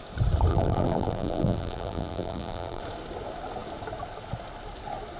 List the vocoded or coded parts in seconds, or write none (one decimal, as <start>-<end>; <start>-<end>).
0.5-2.8